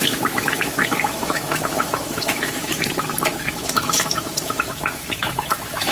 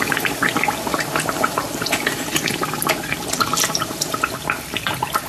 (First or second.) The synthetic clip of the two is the first